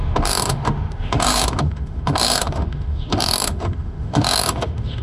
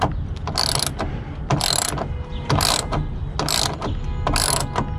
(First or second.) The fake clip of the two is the first